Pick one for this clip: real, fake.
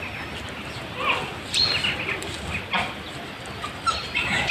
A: real